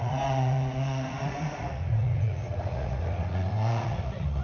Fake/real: fake